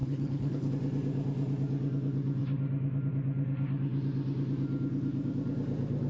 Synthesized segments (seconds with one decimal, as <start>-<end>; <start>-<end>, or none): 0.0-0.7